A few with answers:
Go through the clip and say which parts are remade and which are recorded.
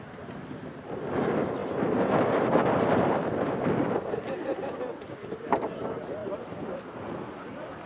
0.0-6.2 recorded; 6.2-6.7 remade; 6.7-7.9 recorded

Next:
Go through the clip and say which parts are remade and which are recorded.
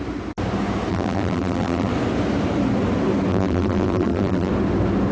0.0-0.9 recorded; 0.9-1.9 remade; 1.9-3.3 recorded; 3.3-4.5 remade; 4.5-5.1 recorded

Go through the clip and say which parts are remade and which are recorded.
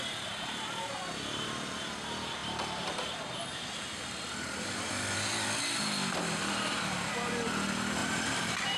0.0-2.4 recorded; 2.4-4.9 remade; 4.9-8.0 recorded; 8.0-8.8 remade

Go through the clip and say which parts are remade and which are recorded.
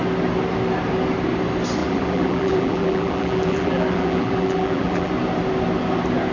0.0-1.8 recorded; 1.8-5.1 remade; 5.1-6.3 recorded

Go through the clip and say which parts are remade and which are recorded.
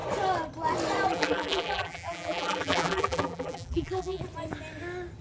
0.0-1.1 recorded; 1.1-4.2 remade; 4.2-5.2 recorded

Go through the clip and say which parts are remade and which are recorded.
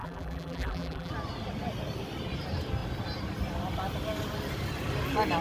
0.0-1.1 remade; 1.1-5.4 recorded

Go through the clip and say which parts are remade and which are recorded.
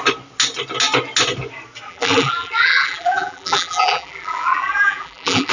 0.0-1.9 recorded; 1.9-5.5 remade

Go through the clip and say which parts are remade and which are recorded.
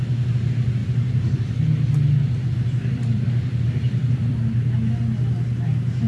0.0-0.8 recorded; 0.8-1.5 remade; 1.5-2.2 recorded; 2.2-4.4 remade; 4.4-6.1 recorded